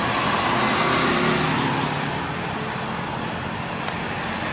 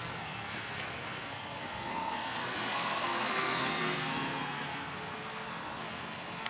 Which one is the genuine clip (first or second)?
first